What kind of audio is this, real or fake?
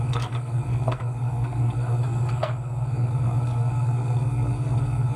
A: fake